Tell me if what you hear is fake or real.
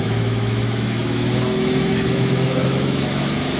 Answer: fake